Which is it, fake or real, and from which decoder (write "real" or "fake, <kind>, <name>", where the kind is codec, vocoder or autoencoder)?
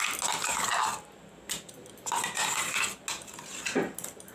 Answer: real